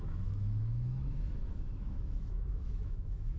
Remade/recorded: remade